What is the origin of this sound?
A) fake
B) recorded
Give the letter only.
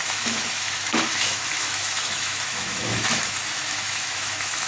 A